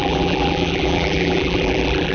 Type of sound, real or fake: fake